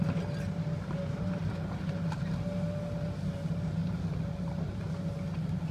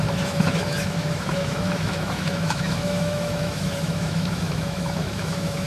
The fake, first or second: second